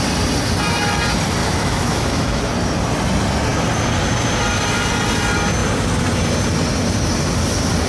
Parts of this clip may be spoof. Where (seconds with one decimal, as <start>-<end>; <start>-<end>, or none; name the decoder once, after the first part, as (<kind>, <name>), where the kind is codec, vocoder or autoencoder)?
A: 1.4-2.4 (autoencoder, DAC-VAE)